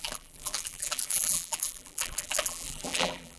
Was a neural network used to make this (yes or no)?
yes